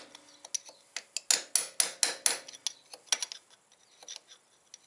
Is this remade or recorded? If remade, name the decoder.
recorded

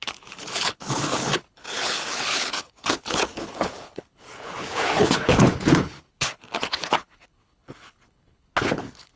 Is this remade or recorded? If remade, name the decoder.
remade, codec, HILCodec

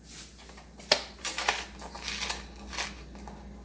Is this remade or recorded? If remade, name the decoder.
recorded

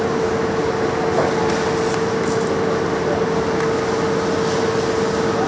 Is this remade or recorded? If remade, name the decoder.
recorded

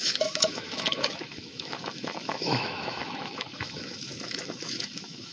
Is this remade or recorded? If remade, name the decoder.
remade, autoencoder, DAC-VAE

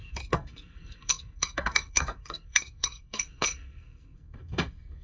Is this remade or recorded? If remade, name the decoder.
remade, codec, SNAC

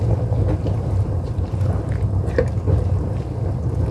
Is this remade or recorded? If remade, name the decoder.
recorded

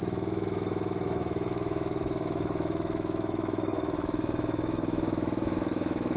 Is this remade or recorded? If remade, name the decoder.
remade, autoencoder, DAC-VAE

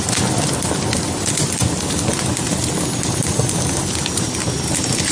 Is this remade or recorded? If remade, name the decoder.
recorded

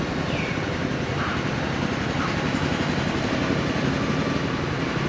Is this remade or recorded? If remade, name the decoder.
recorded